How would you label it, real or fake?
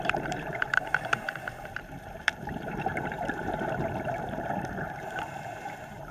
fake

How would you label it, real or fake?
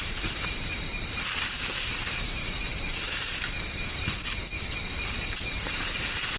fake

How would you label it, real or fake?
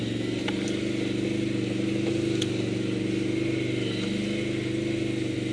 real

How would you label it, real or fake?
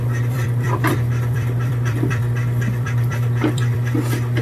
fake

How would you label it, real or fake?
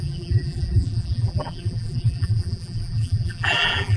fake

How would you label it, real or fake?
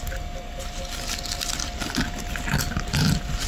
real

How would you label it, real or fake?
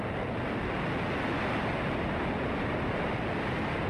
real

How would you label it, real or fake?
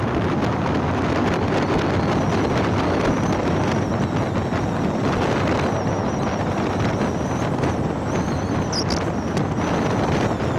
real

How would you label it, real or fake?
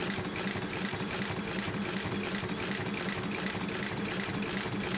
real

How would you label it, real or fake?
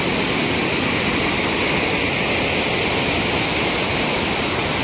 real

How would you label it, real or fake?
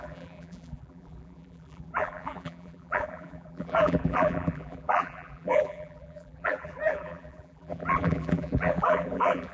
fake